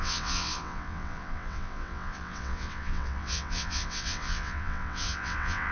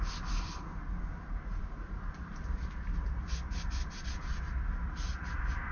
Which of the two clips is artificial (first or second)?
first